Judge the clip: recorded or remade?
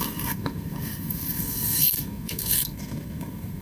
remade